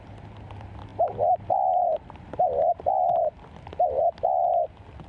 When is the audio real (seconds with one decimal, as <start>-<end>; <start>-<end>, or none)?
0.0-0.9; 4.0-5.1